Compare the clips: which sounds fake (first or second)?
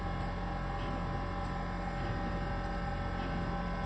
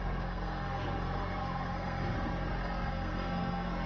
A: second